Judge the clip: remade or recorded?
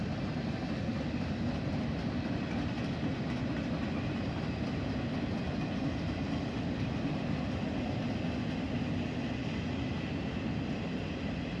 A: recorded